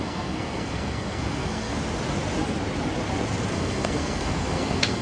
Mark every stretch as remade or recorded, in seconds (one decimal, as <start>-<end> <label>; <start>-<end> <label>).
0.0-1.7 remade; 1.7-3.5 recorded; 3.5-5.0 remade